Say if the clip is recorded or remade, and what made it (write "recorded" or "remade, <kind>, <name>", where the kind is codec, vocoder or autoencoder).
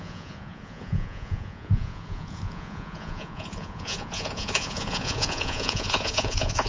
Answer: remade, vocoder, Vocos